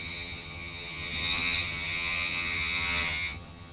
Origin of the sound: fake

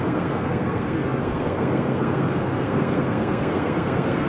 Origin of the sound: fake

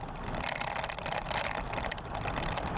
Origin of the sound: real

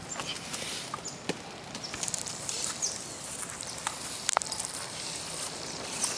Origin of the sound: real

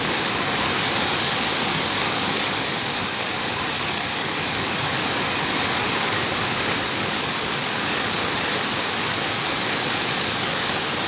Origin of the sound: fake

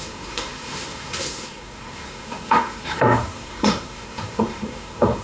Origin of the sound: fake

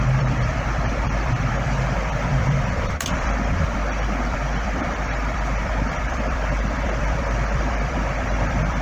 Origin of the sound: fake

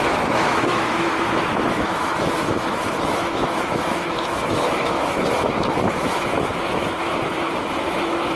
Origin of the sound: fake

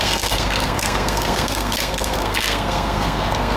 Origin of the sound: fake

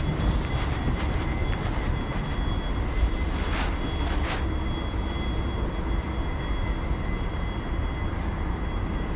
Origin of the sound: real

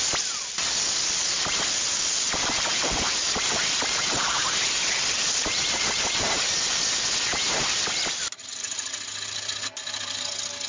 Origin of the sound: real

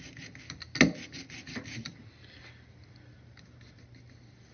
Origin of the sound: real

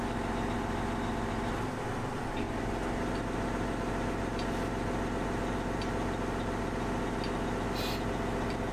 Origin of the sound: real